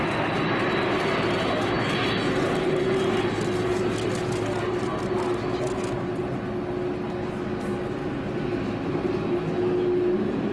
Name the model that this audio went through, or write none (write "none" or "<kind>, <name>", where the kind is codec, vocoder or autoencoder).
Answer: none